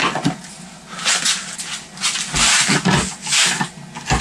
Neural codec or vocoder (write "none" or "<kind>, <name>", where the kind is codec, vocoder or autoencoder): none